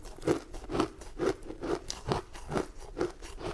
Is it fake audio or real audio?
fake